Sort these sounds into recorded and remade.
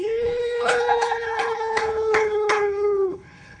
remade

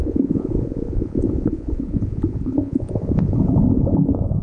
remade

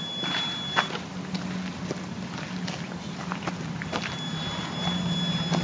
recorded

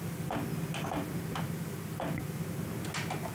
recorded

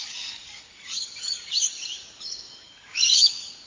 remade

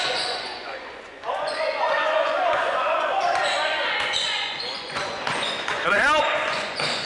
remade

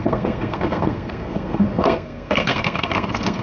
remade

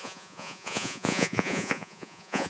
remade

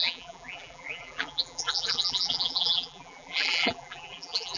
remade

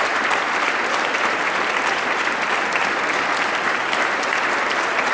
recorded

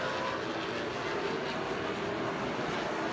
recorded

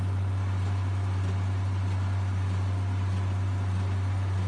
recorded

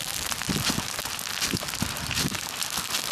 recorded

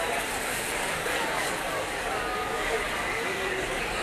remade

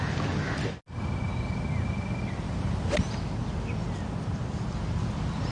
recorded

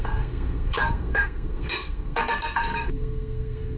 remade